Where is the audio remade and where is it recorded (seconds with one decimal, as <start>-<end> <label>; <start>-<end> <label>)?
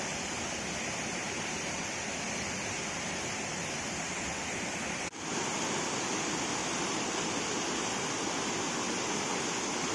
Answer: 0.0-6.6 recorded; 6.6-7.1 remade; 7.1-9.9 recorded